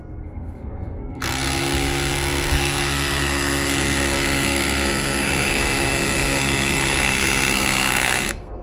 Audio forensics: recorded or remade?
remade